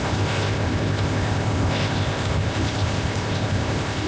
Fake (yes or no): yes